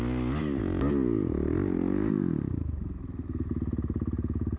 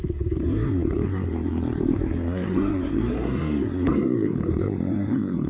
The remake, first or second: second